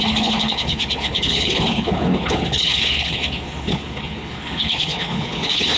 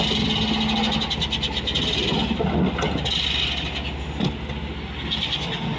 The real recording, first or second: second